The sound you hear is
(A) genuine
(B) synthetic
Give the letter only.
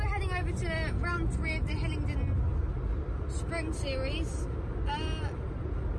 A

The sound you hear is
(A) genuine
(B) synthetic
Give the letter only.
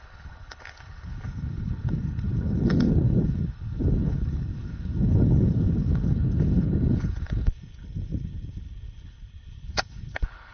B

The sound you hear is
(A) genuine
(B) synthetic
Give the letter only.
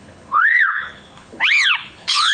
B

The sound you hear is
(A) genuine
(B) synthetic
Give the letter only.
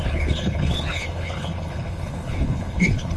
B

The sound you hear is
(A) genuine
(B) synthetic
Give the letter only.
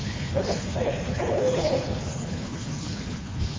B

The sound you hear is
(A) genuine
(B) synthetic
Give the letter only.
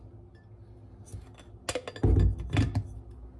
A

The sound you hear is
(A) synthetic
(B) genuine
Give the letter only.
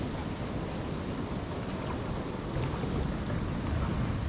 B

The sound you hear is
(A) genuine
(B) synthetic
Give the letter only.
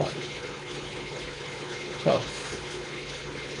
B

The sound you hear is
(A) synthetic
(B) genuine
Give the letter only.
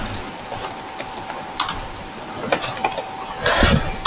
B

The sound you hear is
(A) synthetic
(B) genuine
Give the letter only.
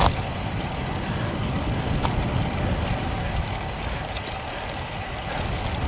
B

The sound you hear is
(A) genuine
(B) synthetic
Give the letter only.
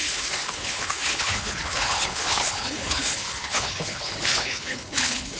B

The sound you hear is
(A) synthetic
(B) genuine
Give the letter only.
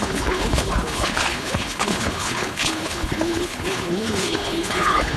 A